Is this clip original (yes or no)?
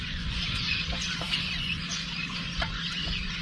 no